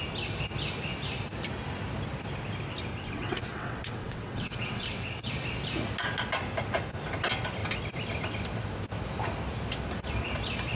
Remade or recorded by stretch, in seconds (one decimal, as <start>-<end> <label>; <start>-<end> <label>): 0.0-2.9 recorded; 2.9-5.3 remade; 5.3-10.7 recorded